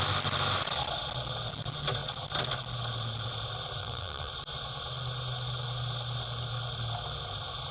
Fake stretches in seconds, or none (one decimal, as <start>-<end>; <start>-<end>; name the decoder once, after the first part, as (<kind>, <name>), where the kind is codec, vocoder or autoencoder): 3.8-4.3 (vocoder, WaveNeXt)